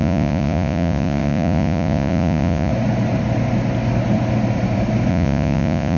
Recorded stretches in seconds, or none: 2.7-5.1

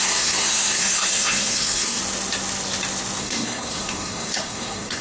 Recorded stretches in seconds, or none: 2.0-3.2

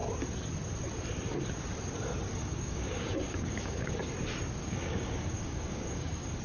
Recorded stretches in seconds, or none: 0.0-2.3; 3.9-4.6

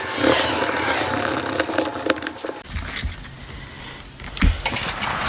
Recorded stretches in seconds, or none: 0.0-5.3

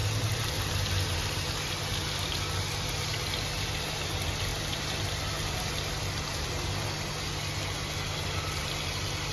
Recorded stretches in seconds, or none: 0.0-9.3

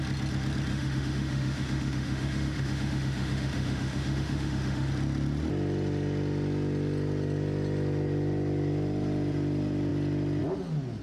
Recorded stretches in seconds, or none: 0.0-0.7; 4.9-11.0

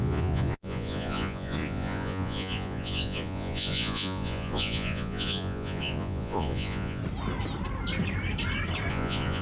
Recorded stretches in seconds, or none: 7.0-8.9